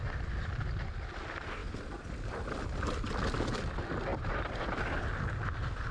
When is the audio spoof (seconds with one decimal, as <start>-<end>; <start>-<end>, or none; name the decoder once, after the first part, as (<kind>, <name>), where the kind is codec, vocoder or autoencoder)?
4.1-4.6 (vocoder, BigVGAN v2)